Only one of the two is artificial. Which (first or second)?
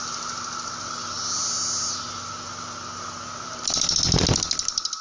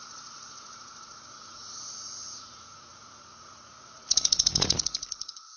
second